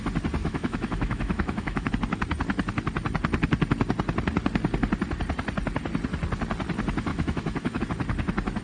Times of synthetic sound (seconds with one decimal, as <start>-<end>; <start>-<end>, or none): 0.4-1.9; 7.1-7.8